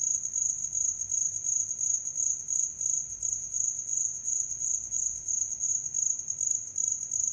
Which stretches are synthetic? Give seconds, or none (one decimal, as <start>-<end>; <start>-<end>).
3.9-5.7